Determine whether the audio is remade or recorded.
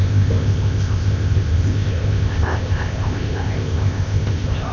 remade